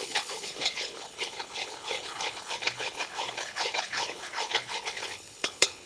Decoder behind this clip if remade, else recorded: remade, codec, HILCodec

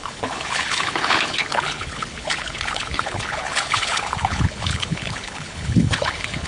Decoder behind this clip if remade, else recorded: remade, codec, HILCodec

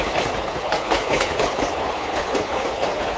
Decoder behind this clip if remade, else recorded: remade, codec, HILCodec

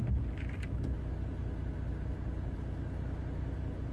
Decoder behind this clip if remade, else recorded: recorded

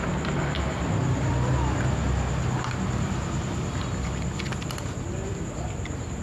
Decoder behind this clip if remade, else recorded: recorded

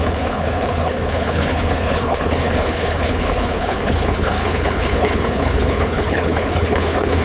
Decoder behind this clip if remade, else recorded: remade, codec, HILCodec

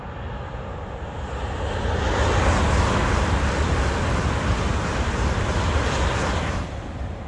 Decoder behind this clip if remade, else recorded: recorded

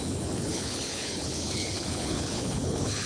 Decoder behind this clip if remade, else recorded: remade, codec, HILCodec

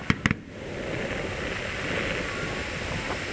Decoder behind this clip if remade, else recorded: recorded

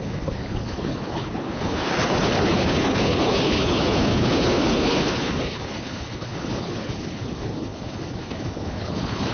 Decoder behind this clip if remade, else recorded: remade, codec, HILCodec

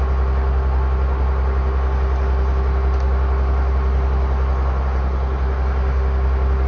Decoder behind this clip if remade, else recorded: recorded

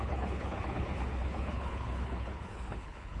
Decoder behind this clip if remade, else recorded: remade, codec, HILCodec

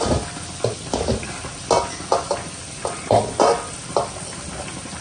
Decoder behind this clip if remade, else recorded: recorded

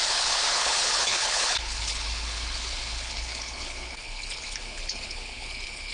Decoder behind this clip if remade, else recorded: remade, codec, HILCodec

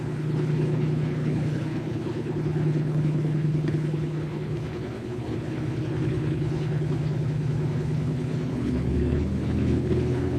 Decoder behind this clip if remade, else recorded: remade, codec, HILCodec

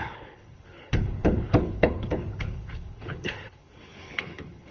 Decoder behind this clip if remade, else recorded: remade, codec, HILCodec